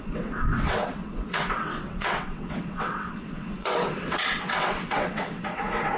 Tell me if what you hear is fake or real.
fake